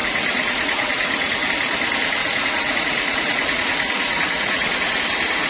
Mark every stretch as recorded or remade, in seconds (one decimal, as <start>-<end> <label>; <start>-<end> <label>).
0.0-1.5 remade; 1.5-2.2 recorded; 2.2-5.0 remade; 5.0-5.5 recorded